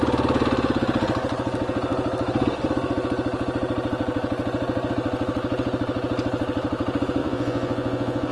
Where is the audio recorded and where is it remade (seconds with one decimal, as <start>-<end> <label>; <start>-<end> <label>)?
0.0-7.2 recorded; 7.2-8.3 remade